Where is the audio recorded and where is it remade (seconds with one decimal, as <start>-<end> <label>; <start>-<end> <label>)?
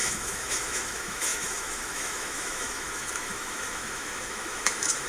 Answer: 0.0-5.1 remade